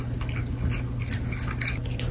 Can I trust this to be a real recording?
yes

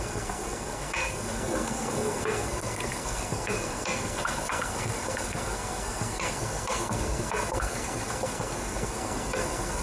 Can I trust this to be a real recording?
no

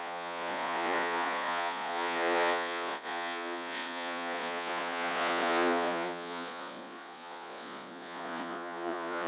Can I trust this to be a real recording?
no